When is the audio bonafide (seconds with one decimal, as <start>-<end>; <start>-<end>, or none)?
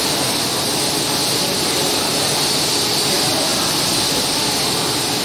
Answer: 0.0-5.2